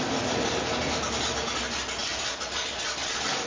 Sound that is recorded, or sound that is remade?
recorded